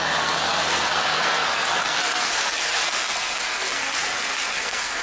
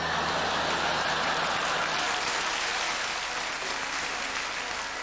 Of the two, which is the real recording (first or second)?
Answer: second